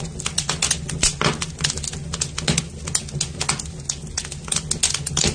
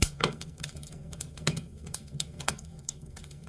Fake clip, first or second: second